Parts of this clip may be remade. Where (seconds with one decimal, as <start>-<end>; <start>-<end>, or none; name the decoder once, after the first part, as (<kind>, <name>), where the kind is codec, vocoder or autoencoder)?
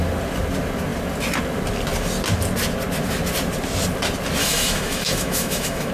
4.4-5.9 (autoencoder, DAC-VAE)